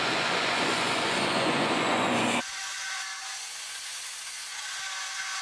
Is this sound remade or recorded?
remade